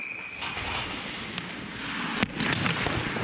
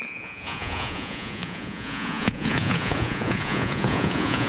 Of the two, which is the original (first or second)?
first